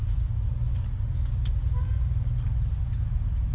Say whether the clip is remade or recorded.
recorded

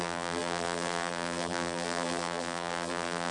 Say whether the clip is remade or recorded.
remade